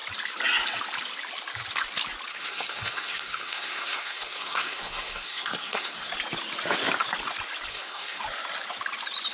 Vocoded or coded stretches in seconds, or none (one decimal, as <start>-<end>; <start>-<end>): 2.3-6.1; 7.7-8.2